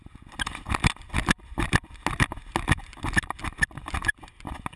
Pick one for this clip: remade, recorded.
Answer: recorded